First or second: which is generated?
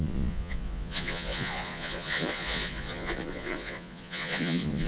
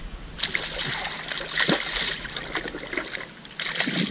first